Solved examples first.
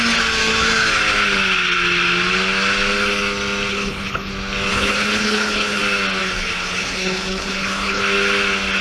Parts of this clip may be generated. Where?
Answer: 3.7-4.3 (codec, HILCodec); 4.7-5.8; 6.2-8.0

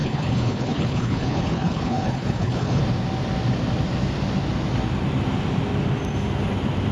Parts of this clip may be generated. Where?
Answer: 0.0-2.8 (codec, HILCodec)

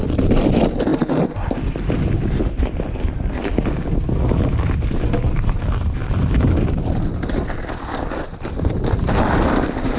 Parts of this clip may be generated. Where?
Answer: none

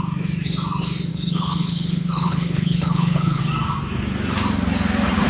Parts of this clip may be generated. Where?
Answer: 1.1-3.4 (codec, HILCodec)

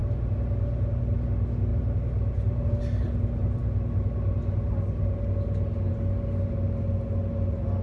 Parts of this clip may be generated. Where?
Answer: none